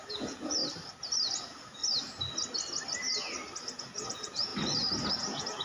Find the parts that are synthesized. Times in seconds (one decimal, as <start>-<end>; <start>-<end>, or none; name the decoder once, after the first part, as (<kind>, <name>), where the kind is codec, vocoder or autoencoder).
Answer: 0.0-0.6 (vocoder, Vocos); 1.4-1.8; 3.8-4.5; 5.1-5.6